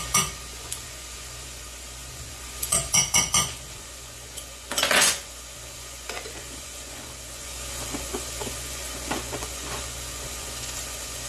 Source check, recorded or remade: remade